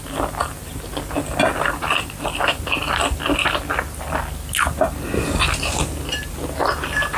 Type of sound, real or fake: real